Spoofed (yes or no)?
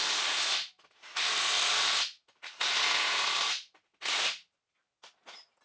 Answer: no